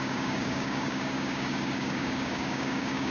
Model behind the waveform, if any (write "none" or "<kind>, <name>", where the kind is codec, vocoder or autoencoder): codec, DAC